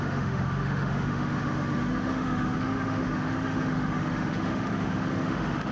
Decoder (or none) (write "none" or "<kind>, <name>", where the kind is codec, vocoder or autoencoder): autoencoder, DAC-VAE